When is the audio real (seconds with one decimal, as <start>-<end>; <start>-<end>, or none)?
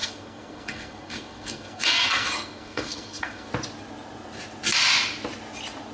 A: 3.5-5.9